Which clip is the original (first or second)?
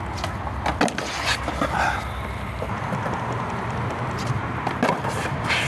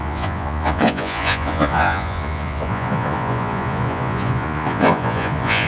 first